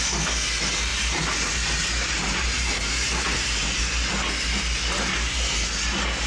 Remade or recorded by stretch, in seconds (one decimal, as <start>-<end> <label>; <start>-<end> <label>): 0.0-0.9 recorded; 0.9-3.8 remade; 3.8-5.1 recorded; 5.1-5.7 remade; 5.7-6.3 recorded

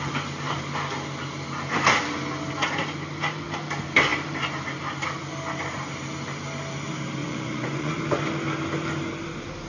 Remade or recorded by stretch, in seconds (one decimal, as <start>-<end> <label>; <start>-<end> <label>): 0.0-7.2 recorded; 7.2-8.0 remade; 8.0-9.7 recorded

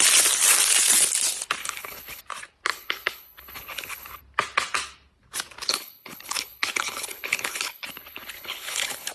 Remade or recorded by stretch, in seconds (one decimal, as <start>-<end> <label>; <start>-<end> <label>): 0.0-1.6 recorded; 1.6-2.2 remade; 2.2-2.7 recorded; 2.7-4.2 remade; 4.2-5.7 recorded; 5.7-9.1 remade